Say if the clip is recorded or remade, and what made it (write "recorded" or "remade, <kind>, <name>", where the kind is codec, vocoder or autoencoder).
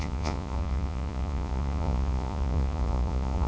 remade, vocoder, Vocos